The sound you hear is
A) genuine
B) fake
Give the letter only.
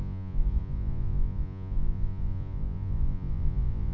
B